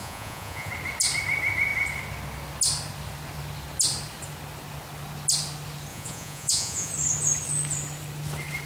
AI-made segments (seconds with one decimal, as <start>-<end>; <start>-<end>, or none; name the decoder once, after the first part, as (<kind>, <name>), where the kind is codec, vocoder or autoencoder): 0.0-0.7 (vocoder, Vocos); 5.9-6.9